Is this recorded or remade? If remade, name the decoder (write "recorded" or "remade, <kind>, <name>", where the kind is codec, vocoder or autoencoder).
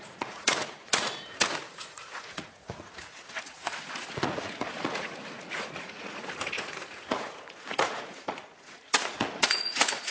remade, vocoder, Vocos